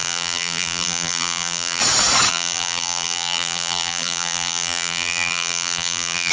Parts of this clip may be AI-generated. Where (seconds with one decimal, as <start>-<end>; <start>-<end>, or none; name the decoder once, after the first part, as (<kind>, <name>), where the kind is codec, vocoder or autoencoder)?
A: 0.0-1.8 (vocoder, BigVGAN v2); 2.3-6.3